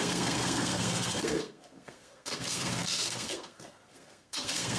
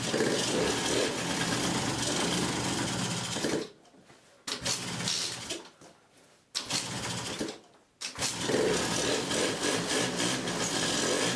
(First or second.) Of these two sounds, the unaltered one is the second